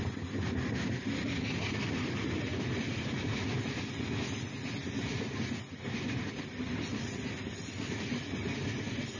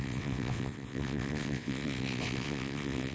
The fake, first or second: second